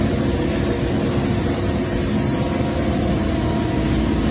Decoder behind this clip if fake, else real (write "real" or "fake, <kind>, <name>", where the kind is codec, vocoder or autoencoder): real